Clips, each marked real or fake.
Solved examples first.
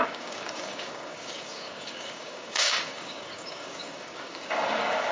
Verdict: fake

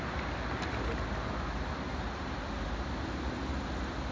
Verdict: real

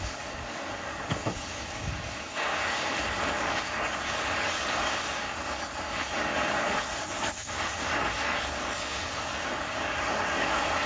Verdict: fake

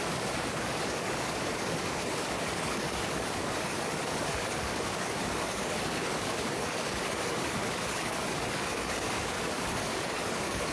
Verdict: fake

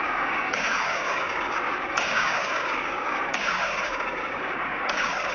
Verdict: fake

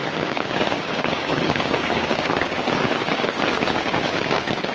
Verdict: fake